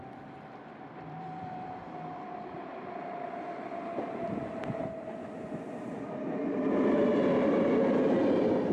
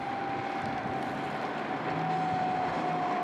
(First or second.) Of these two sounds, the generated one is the first